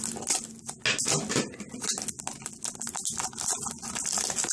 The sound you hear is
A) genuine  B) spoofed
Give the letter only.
A